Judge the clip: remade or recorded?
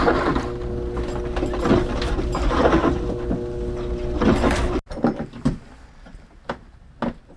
recorded